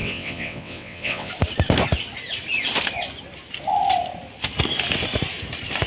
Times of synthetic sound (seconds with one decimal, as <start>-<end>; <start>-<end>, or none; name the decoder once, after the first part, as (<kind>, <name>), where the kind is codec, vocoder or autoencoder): 0.0-1.3 (vocoder, WaveNeXt)